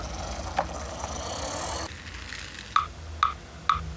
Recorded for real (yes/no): yes